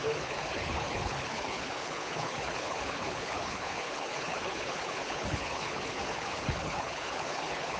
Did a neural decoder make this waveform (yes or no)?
yes